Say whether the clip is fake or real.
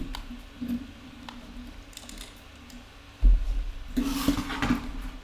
real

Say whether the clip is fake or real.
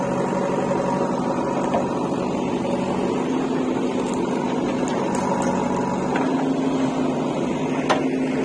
real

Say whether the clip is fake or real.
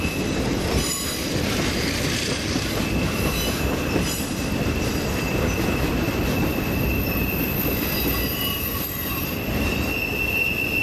fake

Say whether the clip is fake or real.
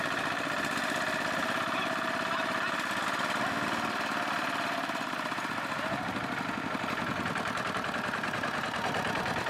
fake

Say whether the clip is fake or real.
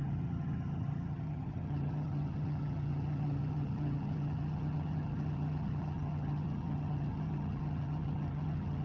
fake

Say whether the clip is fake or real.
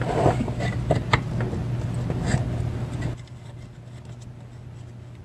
real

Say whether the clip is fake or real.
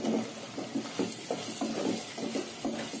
real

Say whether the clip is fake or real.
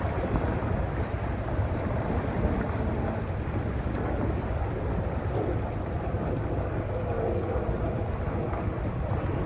fake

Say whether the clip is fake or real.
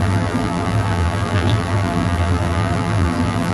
fake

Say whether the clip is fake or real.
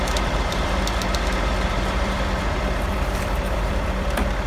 fake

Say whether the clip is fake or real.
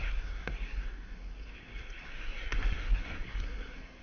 fake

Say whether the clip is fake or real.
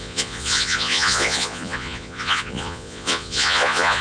fake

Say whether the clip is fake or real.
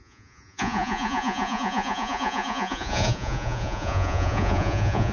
fake